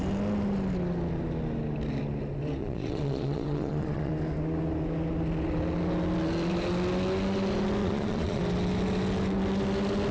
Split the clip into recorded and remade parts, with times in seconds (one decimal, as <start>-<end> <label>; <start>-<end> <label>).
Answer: 0.0-2.6 recorded; 2.6-4.1 remade; 4.1-7.8 recorded; 7.8-8.4 remade; 8.4-10.1 recorded